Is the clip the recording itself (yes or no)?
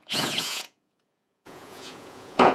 no